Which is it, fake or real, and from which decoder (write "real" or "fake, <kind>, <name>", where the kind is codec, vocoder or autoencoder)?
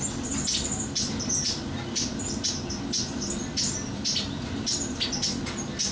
real